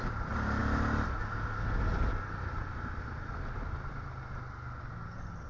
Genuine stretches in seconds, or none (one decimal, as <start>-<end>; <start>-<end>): 0.0-5.5